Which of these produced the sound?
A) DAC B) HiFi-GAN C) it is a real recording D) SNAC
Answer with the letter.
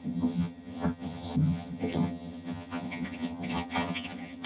B